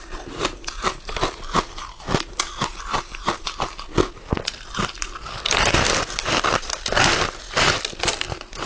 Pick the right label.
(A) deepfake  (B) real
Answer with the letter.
B